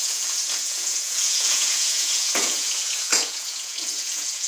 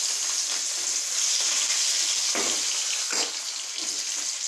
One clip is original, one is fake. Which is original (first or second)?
second